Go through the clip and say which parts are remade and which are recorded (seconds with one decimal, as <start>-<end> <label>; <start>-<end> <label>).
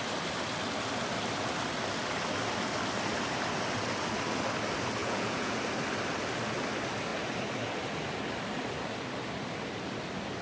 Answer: 0.0-5.0 recorded; 5.0-5.6 remade; 5.6-10.4 recorded